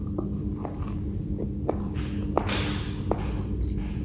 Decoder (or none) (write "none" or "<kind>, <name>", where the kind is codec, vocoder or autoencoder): none